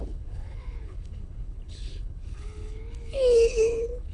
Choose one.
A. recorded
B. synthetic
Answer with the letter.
B